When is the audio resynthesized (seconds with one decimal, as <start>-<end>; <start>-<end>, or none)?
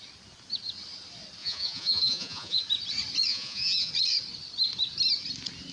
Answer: 1.4-2.6; 3.3-3.9